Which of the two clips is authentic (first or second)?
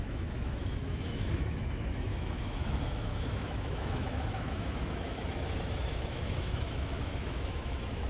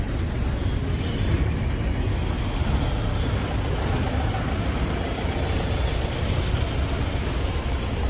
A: second